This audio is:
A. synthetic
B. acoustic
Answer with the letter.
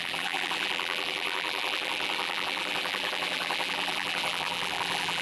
A